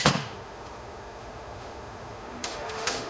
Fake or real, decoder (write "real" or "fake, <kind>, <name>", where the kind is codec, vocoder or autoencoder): fake, autoencoder, DAC-VAE